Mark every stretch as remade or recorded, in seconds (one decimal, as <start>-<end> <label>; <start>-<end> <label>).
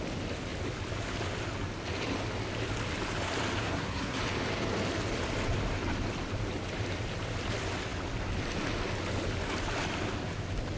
0.0-3.6 recorded; 3.6-4.2 remade; 4.2-10.8 recorded